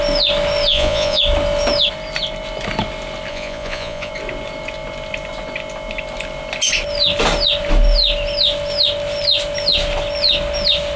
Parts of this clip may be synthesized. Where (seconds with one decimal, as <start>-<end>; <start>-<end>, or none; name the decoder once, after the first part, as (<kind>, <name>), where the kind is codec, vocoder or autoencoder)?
0.7-1.2 (vocoder, Vocos); 3.3-4.1